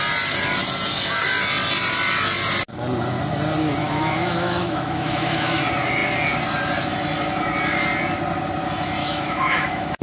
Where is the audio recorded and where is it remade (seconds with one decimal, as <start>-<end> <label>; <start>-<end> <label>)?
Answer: 0.0-3.8 recorded; 3.8-5.6 remade; 5.6-9.0 recorded; 9.0-10.0 remade